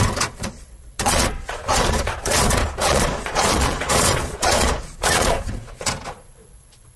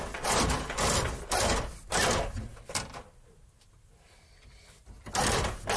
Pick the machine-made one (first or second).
first